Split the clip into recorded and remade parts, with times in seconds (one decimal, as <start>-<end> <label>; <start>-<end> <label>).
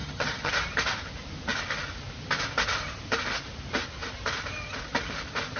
0.0-0.5 remade; 0.5-5.6 recorded